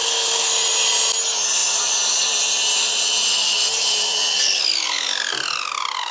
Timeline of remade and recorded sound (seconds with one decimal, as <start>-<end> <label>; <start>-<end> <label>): 0.0-0.5 remade; 0.5-6.1 recorded